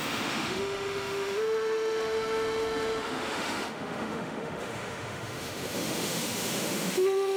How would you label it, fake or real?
fake